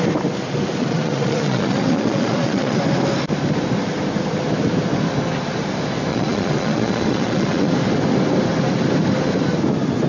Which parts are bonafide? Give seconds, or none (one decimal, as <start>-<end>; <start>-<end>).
0.0-0.8; 2.8-6.1; 7.7-10.1